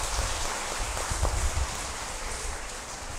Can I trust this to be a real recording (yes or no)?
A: no